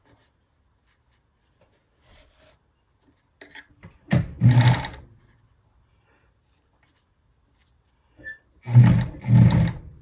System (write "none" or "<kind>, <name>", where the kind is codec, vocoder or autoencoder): none